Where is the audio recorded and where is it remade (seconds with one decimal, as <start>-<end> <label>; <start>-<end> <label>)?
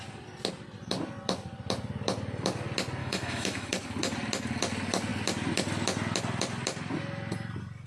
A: 0.0-3.0 recorded; 3.0-3.7 remade; 3.7-7.9 recorded